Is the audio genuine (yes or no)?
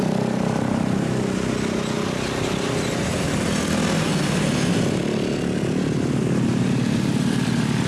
yes